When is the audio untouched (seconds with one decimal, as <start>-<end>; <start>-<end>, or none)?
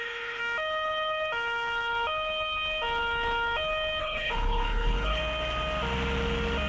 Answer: 0.4-4.0; 5.2-6.7